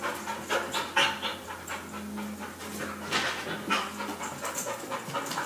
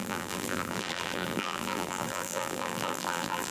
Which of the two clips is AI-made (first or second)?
second